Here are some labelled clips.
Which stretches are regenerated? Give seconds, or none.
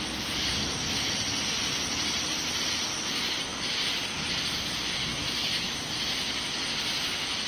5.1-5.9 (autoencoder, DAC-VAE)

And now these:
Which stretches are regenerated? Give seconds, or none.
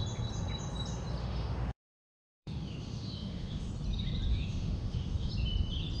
1.2-1.9 (autoencoder, DAC-VAE); 2.3-3.7; 4.3-5.3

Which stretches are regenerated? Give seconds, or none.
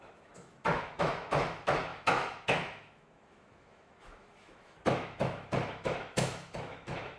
0.0-7.2 (autoencoder, DAC-VAE)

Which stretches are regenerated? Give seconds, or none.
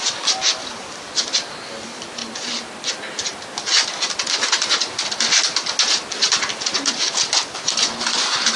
none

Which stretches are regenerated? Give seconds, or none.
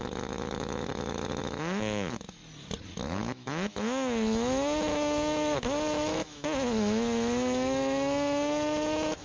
0.0-2.4 (autoencoder, DAC-VAE); 3.0-9.2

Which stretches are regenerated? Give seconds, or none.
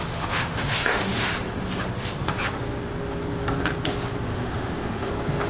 0.0-1.3 (autoencoder, DAC-VAE); 4.3-5.1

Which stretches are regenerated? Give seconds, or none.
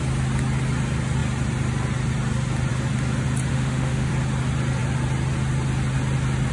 3.5-4.1 (autoencoder, DAC-VAE)